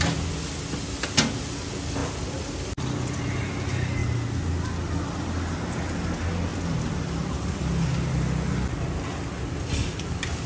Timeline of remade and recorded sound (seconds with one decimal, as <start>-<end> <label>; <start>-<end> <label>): 0.0-2.0 recorded; 2.0-3.4 remade; 3.4-6.5 recorded; 6.5-7.6 remade; 7.6-10.5 recorded